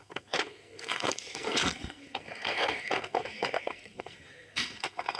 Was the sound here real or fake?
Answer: fake